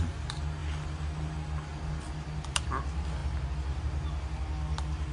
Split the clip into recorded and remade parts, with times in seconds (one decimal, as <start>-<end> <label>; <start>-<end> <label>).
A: 0.0-5.1 recorded